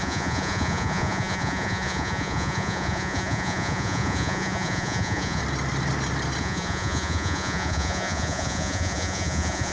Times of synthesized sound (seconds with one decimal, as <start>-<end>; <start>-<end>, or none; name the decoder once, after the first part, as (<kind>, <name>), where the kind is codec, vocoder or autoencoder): 0.0-5.4 (vocoder, Vocos); 6.4-9.7